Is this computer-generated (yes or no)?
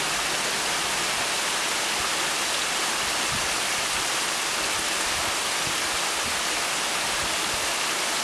no